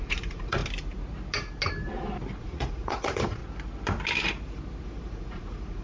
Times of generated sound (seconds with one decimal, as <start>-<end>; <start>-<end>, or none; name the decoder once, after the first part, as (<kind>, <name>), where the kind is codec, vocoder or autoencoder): 0.0-0.6 (vocoder, Vocos); 2.4-3.4; 4.8-5.8